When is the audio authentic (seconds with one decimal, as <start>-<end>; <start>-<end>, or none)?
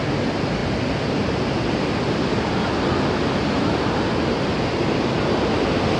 0.0-6.0